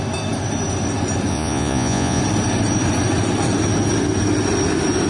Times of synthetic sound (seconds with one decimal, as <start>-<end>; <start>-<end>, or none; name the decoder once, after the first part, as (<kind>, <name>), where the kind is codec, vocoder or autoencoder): 1.3-2.2 (vocoder, Vocos)